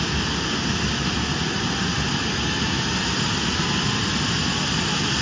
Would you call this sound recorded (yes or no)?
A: yes